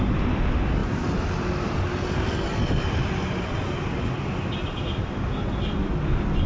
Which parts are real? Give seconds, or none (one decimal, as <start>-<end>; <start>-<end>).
0.0-6.5